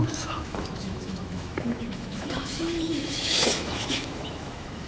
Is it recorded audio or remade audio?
remade